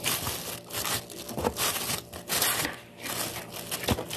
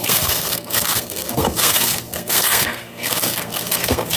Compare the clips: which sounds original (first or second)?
first